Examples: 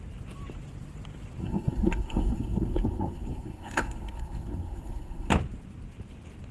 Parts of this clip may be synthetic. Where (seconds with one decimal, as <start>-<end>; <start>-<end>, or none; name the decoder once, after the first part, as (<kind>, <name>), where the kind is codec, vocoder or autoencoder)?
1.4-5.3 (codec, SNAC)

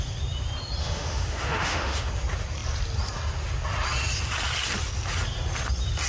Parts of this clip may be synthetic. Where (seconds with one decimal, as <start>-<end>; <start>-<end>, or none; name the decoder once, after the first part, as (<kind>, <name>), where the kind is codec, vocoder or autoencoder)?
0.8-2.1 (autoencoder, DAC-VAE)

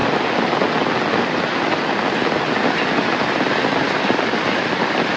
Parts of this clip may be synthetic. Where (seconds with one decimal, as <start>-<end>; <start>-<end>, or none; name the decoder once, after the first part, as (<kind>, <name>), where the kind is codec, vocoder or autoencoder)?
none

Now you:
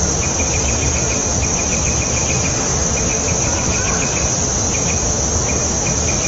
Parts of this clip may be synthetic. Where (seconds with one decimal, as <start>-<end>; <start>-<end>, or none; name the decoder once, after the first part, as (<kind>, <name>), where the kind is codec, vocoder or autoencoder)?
none